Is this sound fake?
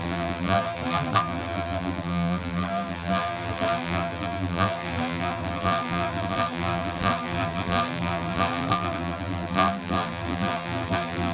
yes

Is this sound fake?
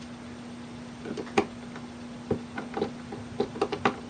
no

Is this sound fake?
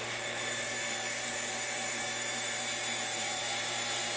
yes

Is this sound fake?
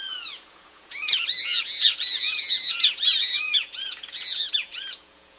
yes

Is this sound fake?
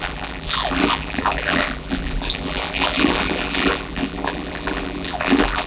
yes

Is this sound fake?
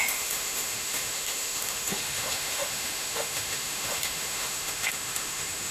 yes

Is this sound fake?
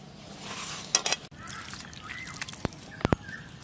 no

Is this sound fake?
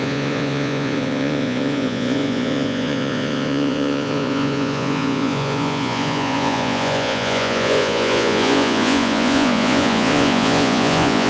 yes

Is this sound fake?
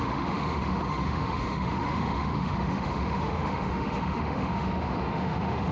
yes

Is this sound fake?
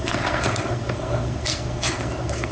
yes